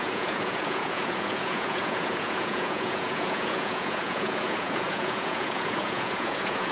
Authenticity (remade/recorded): remade